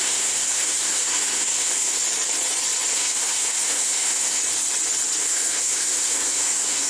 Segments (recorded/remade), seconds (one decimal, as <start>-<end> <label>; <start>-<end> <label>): 0.0-2.0 remade; 2.0-2.9 recorded; 2.9-4.4 remade; 4.4-5.2 recorded; 5.2-6.9 remade